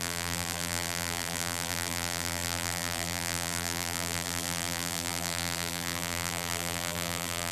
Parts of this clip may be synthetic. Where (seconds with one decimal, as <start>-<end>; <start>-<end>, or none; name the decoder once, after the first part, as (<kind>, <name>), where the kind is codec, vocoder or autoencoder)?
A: 0.0-7.5 (vocoder, BigVGAN v2)